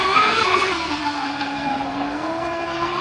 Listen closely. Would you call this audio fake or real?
fake